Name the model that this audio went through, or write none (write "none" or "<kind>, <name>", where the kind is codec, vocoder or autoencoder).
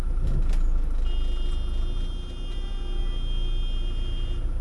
none